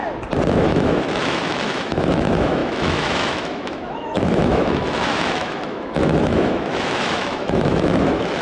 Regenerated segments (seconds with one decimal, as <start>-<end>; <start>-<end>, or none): 0.6-8.4

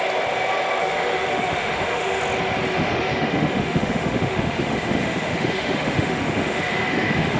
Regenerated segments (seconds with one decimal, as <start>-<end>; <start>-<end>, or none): 0.8-2.2; 2.7-7.4

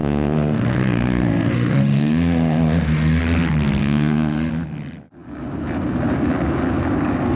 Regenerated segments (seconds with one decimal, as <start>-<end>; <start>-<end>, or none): 0.0-3.2; 3.8-4.5

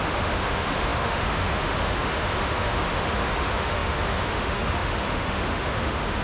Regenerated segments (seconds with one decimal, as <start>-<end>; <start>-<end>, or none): 0.0-6.2

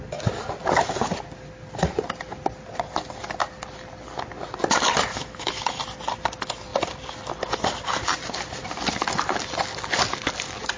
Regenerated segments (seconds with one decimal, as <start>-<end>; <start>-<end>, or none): 5.1-5.8